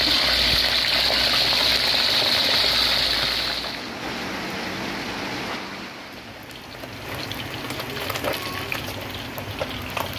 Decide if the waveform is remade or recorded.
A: recorded